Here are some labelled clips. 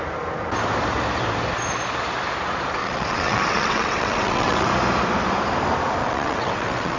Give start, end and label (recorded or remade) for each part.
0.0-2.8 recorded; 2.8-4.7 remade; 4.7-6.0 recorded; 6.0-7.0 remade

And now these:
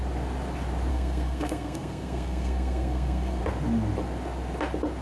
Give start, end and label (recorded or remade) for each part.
0.0-0.9 recorded; 0.9-3.4 remade; 3.4-5.0 recorded

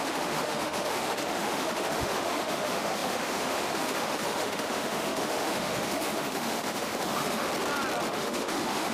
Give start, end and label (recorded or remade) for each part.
0.0-7.5 remade; 7.5-8.1 recorded; 8.1-8.9 remade

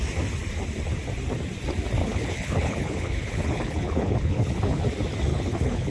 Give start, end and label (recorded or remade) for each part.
0.0-2.0 recorded; 2.0-4.8 remade; 4.8-5.3 recorded; 5.3-5.9 remade

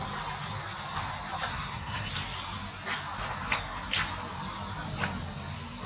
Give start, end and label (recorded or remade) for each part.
0.0-1.5 recorded; 1.5-2.1 remade; 2.1-5.9 recorded